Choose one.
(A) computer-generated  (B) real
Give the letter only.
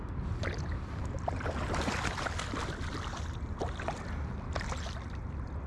B